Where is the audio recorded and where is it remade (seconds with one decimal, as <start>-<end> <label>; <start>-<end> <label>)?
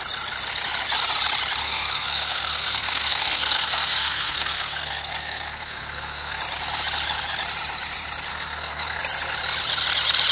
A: 0.0-1.6 recorded; 1.6-6.4 remade; 6.4-8.3 recorded; 8.3-9.0 remade; 9.0-10.3 recorded